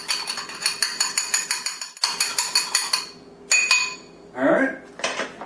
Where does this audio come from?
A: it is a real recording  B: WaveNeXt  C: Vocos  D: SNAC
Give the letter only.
A